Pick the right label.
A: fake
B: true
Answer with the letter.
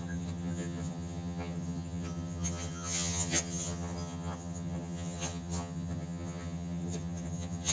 A